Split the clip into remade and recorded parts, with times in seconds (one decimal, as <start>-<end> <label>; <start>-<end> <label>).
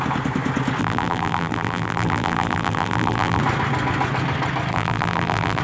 0.0-0.8 recorded; 0.8-3.4 remade; 3.4-4.7 recorded; 4.7-5.6 remade